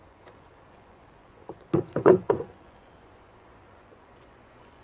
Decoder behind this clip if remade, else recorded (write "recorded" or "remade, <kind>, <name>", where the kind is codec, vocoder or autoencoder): remade, vocoder, Vocos